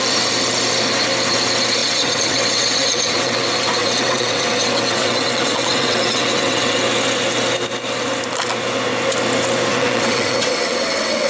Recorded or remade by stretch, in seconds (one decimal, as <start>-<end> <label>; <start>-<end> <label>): 0.0-1.8 recorded; 1.8-3.4 remade; 3.4-3.8 recorded; 3.8-6.8 remade; 6.8-9.7 recorded; 9.7-11.3 remade